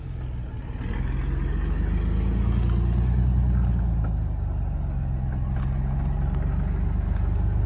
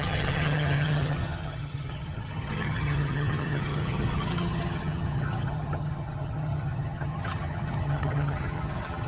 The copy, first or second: second